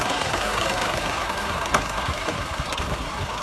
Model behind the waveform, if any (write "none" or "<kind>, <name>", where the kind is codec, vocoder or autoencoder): codec, SNAC